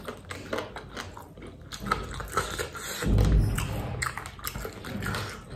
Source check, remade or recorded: recorded